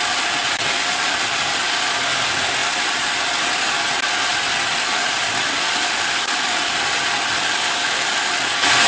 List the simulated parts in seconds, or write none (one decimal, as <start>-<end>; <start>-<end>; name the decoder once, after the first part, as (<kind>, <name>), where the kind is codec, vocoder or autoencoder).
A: 2.6-3.8 (vocoder, BigVGAN v2)